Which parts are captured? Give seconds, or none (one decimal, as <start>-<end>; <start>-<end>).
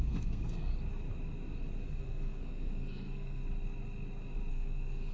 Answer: 0.7-2.0; 3.4-4.5